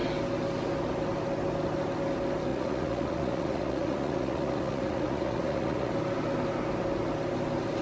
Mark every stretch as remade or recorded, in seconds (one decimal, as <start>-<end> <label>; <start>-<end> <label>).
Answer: 0.0-2.5 recorded; 2.5-5.9 remade; 5.9-7.8 recorded